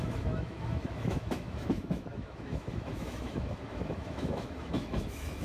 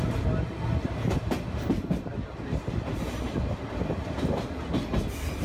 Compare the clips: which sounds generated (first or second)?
first